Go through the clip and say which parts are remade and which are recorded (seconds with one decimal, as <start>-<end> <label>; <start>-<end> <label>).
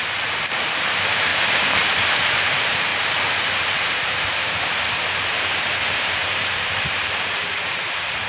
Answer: 0.0-2.9 remade; 2.9-3.6 recorded; 3.6-8.3 remade